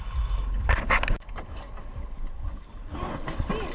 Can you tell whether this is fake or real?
real